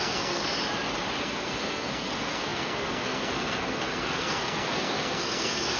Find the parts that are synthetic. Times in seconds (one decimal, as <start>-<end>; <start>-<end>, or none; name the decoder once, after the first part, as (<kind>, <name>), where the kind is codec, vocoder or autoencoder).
0.0-0.4 (codec, SNAC); 1.2-5.8